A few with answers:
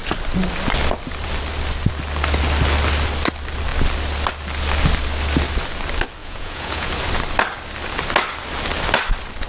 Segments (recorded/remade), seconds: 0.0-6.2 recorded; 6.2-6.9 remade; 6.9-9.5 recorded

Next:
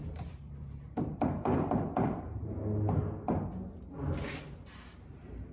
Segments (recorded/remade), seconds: 0.0-2.6 remade; 2.6-4.1 recorded; 4.1-5.5 remade